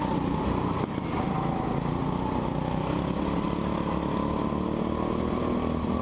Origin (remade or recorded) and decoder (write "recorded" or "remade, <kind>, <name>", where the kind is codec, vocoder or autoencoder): recorded